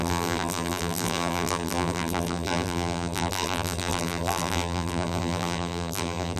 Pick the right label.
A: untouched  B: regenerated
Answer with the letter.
B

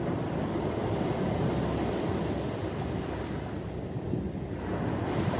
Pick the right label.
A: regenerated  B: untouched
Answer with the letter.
A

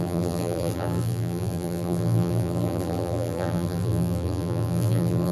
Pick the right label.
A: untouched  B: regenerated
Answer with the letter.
B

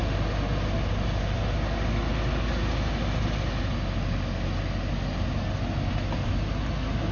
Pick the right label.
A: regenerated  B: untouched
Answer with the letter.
B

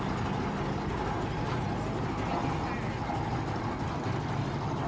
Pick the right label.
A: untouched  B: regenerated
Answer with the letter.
A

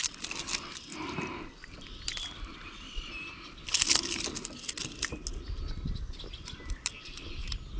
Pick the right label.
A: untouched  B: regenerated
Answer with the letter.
A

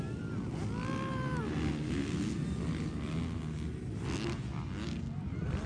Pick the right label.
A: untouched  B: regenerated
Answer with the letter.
A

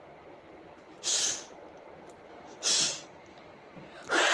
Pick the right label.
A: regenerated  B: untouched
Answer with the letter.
B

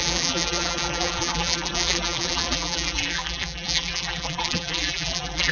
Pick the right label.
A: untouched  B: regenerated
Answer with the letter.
B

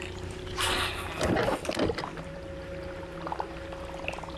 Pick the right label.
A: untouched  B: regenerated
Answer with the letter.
A